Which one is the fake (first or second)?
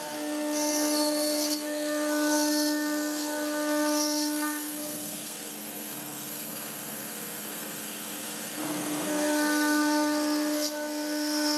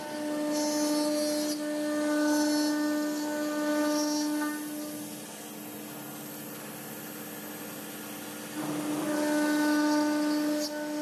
first